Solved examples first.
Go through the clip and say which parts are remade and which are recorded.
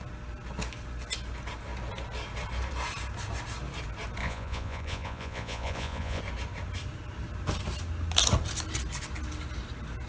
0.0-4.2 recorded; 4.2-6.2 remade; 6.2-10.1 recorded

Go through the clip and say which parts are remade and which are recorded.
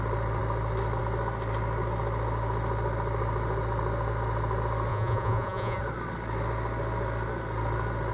0.0-4.9 recorded; 4.9-5.8 remade; 5.8-8.1 recorded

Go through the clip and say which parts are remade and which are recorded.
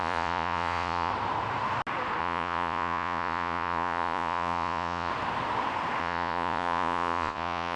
0.0-1.1 remade; 1.1-2.2 recorded; 2.2-5.1 remade; 5.1-6.0 recorded; 6.0-7.8 remade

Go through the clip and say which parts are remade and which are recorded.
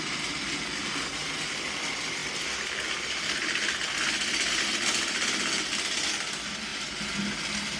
0.0-7.8 recorded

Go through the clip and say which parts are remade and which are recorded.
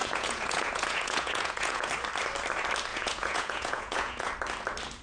0.0-1.9 remade; 1.9-2.9 recorded; 2.9-4.3 remade; 4.3-5.0 recorded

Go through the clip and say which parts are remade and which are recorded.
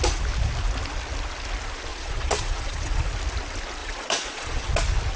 0.0-1.9 recorded; 1.9-3.1 remade; 3.1-3.8 recorded; 3.8-4.7 remade; 4.7-5.2 recorded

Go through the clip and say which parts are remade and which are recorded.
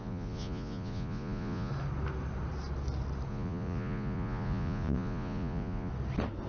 0.0-1.7 remade; 1.7-3.3 recorded; 3.3-5.9 remade; 5.9-6.5 recorded